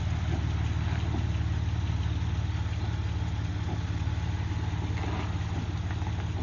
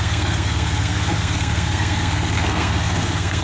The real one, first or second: first